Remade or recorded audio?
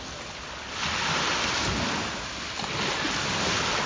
recorded